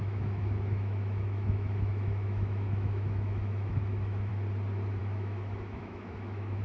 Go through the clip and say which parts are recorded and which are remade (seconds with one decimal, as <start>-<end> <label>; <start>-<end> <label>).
0.0-4.3 remade; 4.3-5.0 recorded; 5.0-6.6 remade